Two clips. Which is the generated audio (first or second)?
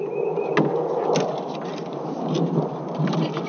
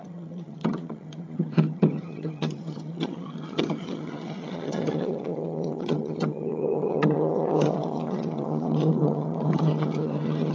second